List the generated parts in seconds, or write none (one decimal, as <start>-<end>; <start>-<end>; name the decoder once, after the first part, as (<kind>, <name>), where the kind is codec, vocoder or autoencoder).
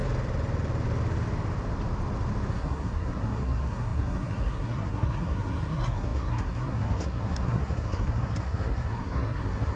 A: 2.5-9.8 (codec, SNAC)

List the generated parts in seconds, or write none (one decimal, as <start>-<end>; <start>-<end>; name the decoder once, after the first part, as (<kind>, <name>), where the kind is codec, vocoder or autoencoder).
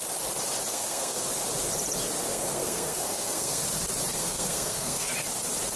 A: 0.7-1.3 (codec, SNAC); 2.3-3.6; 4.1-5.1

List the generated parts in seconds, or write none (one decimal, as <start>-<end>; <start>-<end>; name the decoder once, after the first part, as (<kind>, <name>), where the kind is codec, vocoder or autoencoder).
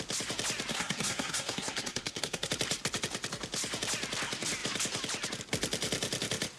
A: 0.7-2.5 (codec, SNAC)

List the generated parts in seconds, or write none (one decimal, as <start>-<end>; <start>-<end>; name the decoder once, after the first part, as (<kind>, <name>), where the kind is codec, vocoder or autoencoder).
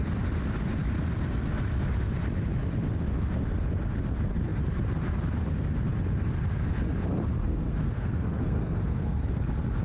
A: 7.4-9.4 (codec, SNAC)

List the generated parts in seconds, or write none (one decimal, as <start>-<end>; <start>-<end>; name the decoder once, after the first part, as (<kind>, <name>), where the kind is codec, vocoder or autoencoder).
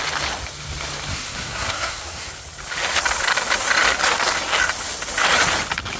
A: 1.1-2.3 (codec, SNAC)